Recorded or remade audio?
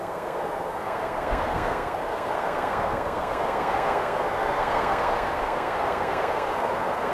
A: remade